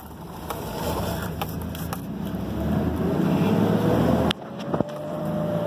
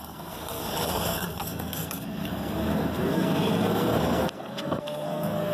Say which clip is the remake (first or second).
second